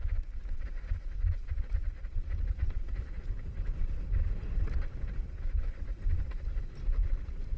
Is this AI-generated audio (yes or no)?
no